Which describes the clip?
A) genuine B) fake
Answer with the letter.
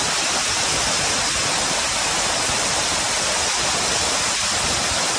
A